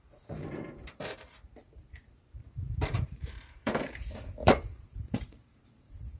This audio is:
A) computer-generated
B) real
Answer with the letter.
A